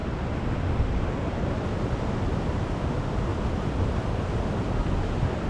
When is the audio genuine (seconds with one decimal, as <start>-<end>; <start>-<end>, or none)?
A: 3.3-4.6